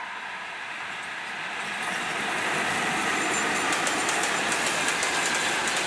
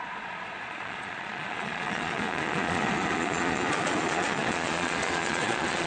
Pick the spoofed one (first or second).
second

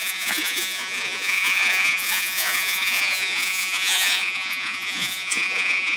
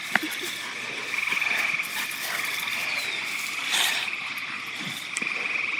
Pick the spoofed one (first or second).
first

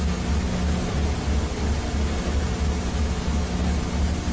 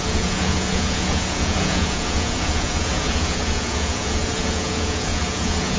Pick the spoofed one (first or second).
second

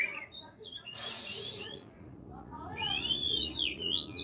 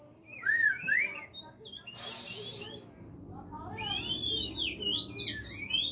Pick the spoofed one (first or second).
first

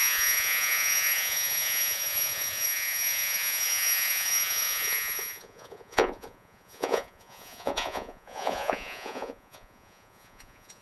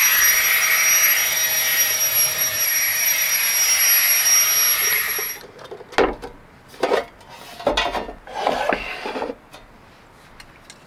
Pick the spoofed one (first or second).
first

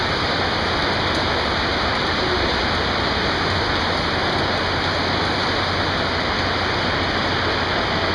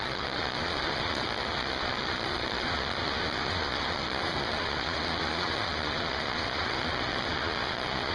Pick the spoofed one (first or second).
second